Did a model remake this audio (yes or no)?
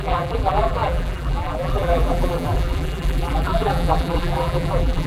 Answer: yes